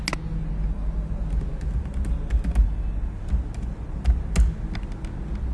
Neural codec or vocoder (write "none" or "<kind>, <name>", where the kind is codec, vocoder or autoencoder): none